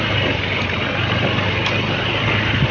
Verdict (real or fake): real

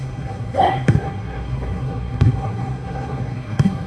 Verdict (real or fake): fake